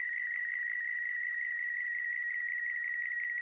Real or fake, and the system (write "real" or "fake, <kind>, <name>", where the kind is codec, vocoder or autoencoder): fake, vocoder, BigVGAN v2